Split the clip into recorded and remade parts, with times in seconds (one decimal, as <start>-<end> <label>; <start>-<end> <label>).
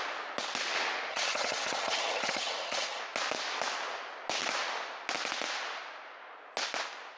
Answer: 0.0-1.1 recorded; 1.1-3.0 remade; 3.0-7.2 recorded